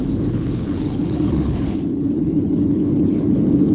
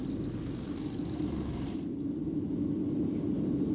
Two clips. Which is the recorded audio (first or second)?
second